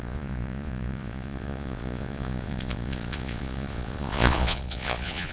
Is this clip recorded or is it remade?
remade